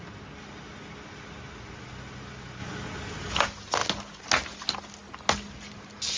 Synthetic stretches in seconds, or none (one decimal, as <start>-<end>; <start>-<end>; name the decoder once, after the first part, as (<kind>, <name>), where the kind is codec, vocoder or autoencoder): none